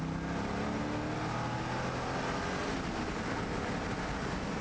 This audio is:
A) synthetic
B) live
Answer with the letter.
B